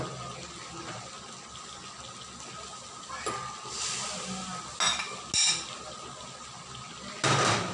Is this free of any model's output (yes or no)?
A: yes